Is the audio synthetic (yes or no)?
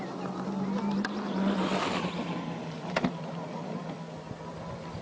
no